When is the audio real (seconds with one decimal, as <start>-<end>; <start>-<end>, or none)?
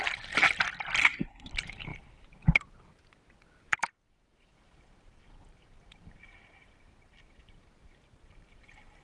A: 0.0-1.0; 1.5-9.0